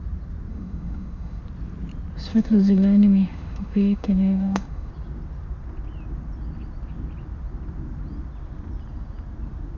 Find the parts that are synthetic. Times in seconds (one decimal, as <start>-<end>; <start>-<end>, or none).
0.5-1.4; 2.3-4.9